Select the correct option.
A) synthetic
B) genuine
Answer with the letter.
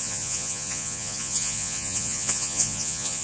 A